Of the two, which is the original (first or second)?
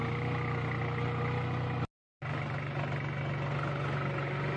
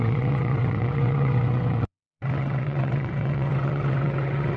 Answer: first